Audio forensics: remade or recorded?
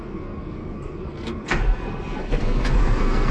remade